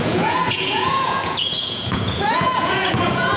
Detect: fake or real fake